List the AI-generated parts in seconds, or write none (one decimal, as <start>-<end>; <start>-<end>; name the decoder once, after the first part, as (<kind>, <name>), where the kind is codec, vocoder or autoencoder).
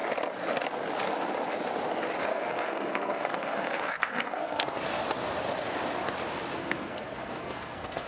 2.3-4.8 (codec, SNAC); 6.6-8.1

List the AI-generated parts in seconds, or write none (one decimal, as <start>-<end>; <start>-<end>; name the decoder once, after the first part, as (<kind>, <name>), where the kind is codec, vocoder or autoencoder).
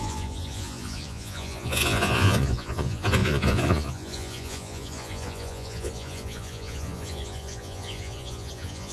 0.0-8.9 (vocoder, Vocos)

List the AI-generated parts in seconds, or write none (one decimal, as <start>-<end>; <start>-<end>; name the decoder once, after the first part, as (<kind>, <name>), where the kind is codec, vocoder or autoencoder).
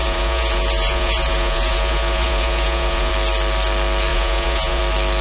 0.0-3.1 (vocoder, Vocos); 4.1-4.8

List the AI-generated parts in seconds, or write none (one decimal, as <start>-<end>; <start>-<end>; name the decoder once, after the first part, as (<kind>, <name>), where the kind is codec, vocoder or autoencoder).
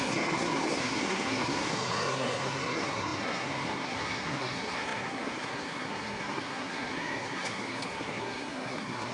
0.0-9.1 (codec, SNAC)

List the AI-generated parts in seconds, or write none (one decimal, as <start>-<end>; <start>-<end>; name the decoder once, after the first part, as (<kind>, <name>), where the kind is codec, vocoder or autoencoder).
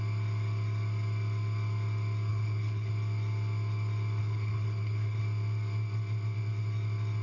2.3-2.9 (codec, HILCodec); 4.2-5.2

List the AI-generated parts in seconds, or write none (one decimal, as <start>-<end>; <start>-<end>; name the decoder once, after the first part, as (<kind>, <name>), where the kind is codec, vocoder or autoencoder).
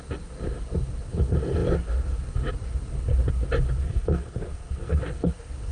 3.8-5.3 (codec, SNAC)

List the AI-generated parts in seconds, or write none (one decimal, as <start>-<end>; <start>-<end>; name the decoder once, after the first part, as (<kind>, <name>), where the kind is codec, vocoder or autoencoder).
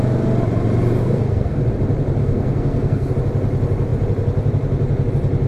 1.0-1.6 (codec, SNAC); 2.2-3.1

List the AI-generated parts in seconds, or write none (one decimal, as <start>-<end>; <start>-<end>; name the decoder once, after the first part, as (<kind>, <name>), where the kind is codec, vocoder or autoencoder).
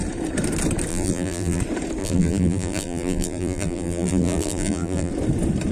0.9-1.6 (vocoder, BigVGAN v2); 2.0-5.1